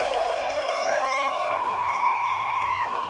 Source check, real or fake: fake